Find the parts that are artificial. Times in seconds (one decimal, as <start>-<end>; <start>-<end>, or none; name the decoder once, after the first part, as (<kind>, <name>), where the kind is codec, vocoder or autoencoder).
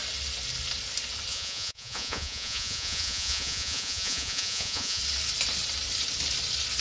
1.3-5.0 (vocoder, Vocos)